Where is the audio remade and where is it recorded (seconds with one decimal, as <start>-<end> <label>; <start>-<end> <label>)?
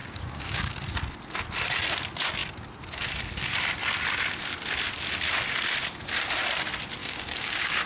0.0-0.7 remade; 0.7-7.0 recorded; 7.0-7.9 remade